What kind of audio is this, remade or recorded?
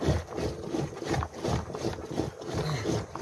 recorded